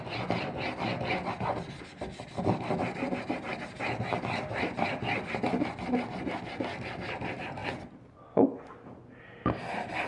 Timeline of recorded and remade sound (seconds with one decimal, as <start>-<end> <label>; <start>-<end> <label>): 0.0-10.1 recorded